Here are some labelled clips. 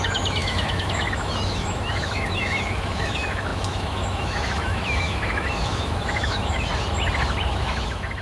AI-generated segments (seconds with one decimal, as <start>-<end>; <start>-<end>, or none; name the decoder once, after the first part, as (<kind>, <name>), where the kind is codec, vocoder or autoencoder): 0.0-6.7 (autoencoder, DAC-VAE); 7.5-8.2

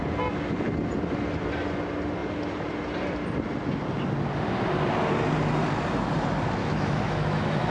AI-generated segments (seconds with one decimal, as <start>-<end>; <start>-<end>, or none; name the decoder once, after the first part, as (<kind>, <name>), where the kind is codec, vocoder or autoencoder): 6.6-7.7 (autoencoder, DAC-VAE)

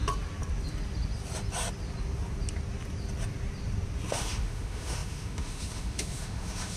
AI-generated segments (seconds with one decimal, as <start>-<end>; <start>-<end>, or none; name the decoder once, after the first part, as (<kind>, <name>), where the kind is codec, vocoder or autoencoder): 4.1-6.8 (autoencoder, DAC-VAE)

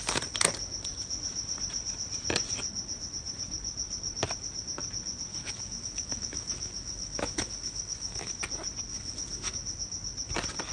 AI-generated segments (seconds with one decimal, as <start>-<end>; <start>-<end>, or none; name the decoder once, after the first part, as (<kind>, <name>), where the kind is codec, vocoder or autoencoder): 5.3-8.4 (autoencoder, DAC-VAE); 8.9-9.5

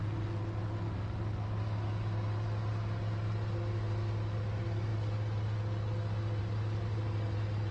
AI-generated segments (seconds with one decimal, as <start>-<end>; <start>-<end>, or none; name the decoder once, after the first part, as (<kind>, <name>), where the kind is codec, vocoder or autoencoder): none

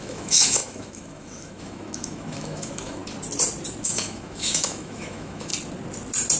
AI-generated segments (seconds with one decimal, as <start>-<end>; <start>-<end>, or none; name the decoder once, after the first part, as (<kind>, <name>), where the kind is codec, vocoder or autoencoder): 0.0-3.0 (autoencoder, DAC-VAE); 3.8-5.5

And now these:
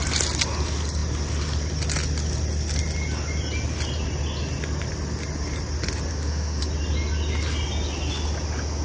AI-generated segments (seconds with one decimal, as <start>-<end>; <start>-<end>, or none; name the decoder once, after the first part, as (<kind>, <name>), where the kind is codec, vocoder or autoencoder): 6.1-6.6 (autoencoder, DAC-VAE)

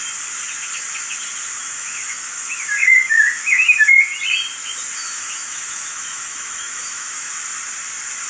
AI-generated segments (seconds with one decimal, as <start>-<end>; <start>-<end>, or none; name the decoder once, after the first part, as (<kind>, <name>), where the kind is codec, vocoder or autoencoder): 1.6-4.0 (autoencoder, DAC-VAE); 5.0-7.3